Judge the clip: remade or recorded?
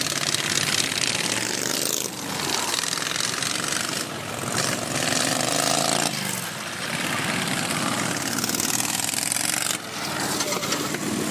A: recorded